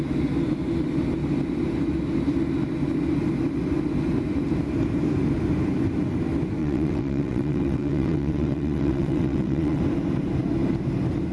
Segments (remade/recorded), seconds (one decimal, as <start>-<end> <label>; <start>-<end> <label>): 0.0-6.6 recorded; 6.6-9.8 remade; 9.8-11.3 recorded